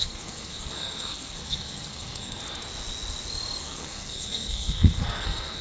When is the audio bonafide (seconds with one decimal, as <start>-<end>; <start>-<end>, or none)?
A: 2.4-3.6